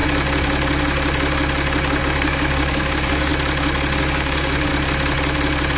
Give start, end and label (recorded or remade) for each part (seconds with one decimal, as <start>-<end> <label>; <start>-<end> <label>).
0.0-2.0 recorded; 2.0-3.3 remade; 3.3-4.0 recorded; 4.0-4.7 remade; 4.7-5.8 recorded